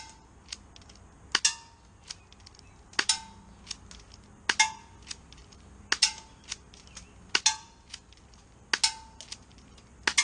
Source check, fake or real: real